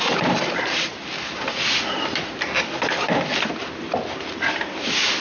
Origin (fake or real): real